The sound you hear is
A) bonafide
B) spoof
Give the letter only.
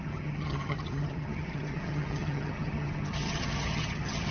B